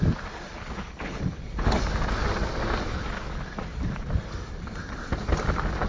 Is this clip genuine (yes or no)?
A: yes